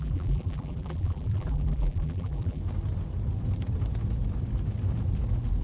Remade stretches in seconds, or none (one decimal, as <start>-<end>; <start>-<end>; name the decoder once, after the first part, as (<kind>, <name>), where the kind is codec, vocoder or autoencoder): 0.0-2.6 (vocoder, BigVGAN v2)